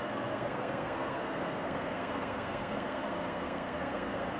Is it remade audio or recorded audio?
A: remade